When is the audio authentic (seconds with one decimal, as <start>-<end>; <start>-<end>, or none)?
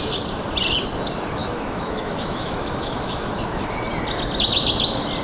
0.0-1.4; 3.7-5.2